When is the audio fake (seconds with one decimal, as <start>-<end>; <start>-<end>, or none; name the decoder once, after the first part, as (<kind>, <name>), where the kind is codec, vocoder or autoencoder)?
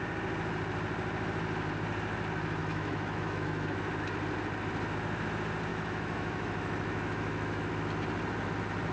2.6-3.9 (autoencoder, DAC-VAE); 5.7-7.7